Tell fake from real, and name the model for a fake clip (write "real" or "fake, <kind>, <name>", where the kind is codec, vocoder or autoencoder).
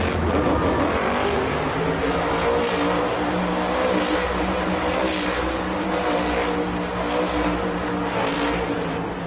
real